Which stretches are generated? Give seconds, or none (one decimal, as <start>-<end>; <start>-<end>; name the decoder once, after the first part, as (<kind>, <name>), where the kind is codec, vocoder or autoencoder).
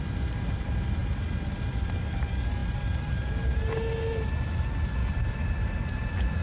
5.0-5.6 (vocoder, BigVGAN v2)